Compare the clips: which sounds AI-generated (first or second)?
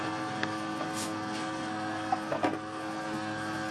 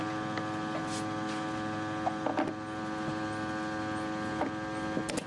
first